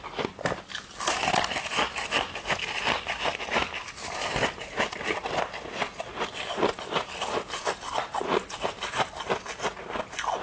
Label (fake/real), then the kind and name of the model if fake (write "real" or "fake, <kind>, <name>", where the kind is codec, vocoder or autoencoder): real